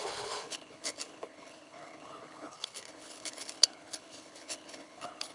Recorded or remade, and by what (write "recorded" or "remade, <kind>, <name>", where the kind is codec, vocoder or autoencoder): remade, codec, HILCodec